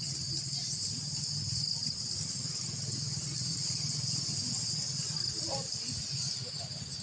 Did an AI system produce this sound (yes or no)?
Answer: no